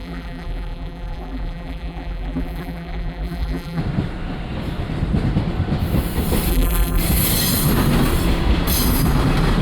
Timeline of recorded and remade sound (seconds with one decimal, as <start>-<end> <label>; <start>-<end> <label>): 0.0-3.8 remade; 3.8-6.5 recorded; 6.5-7.0 remade; 7.0-9.6 recorded